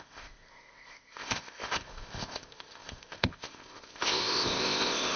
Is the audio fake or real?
fake